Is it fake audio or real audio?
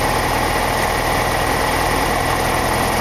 real